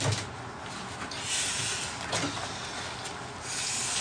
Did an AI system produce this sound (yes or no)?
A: no